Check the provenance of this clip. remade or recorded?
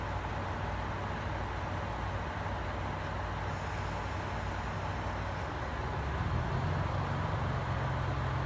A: recorded